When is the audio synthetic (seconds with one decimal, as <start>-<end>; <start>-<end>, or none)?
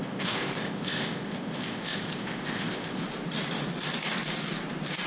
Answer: 0.0-3.0